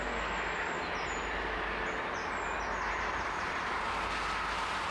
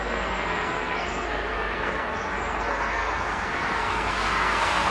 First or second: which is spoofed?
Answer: second